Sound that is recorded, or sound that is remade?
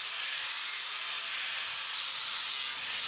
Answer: recorded